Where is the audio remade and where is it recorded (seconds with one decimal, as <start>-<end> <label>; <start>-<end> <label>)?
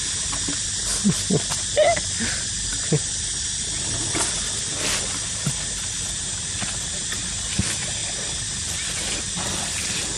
0.0-10.2 recorded